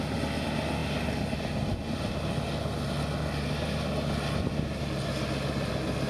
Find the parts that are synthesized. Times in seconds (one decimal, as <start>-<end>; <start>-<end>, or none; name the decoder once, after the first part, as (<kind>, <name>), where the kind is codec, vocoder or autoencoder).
none